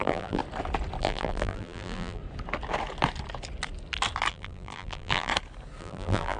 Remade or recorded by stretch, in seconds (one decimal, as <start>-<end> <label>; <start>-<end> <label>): 0.0-0.4 remade; 0.4-1.0 recorded; 1.0-2.2 remade; 2.2-4.3 recorded; 4.3-5.3 remade; 5.3-5.8 recorded; 5.8-6.4 remade